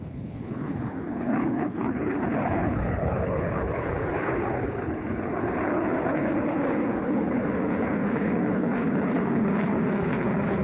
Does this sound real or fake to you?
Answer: fake